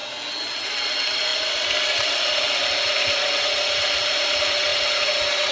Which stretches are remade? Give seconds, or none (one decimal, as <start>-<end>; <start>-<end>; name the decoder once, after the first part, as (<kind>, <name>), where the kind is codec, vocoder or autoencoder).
none